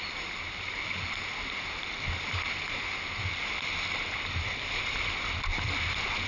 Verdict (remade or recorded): recorded